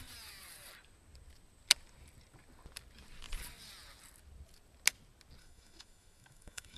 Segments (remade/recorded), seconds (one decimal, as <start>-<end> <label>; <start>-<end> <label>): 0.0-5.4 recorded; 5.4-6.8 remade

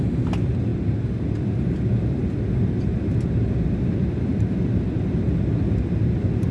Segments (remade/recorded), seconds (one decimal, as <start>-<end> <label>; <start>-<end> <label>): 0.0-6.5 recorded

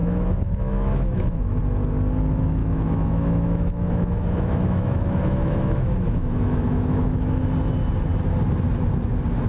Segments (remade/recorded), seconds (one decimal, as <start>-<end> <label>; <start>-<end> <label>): 0.0-1.6 remade; 1.6-2.6 recorded; 2.6-7.4 remade; 7.4-9.5 recorded

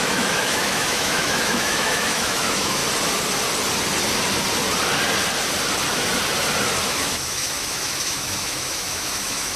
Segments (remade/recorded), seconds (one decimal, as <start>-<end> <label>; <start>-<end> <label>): 0.0-2.8 remade; 2.8-6.9 recorded; 6.9-9.6 remade

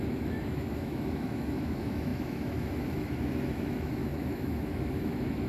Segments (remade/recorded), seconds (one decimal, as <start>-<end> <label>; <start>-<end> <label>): 0.0-5.5 remade

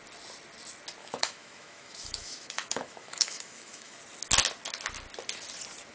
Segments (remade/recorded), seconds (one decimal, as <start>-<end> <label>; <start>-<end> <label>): 0.0-1.0 recorded; 1.0-4.0 remade; 4.0-5.9 recorded

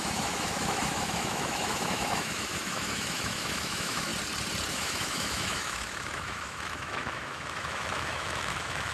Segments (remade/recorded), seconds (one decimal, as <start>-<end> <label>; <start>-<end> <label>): 0.0-4.1 remade; 4.1-4.7 recorded; 4.7-8.9 remade